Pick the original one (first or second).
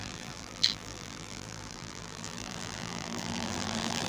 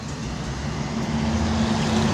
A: second